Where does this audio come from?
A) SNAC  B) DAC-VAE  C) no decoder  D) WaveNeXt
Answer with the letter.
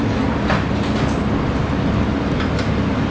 C